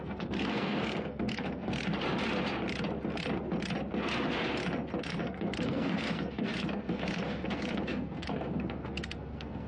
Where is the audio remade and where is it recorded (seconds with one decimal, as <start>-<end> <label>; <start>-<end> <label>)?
0.0-1.8 remade; 1.8-5.0 recorded; 5.0-9.7 remade